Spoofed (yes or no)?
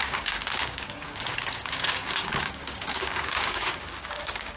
yes